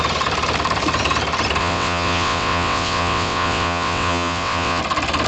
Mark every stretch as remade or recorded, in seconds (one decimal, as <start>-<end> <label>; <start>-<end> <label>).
0.0-1.6 recorded; 1.6-4.8 remade; 4.8-5.3 recorded

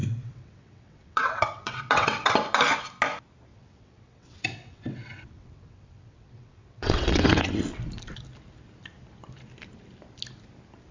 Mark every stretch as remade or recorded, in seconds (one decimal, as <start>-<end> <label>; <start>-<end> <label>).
0.0-2.3 remade; 2.3-3.5 recorded; 3.5-7.4 remade; 7.4-10.9 recorded